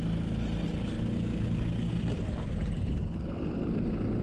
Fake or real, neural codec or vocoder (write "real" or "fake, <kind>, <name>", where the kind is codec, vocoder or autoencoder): real